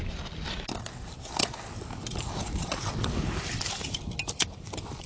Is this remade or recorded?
recorded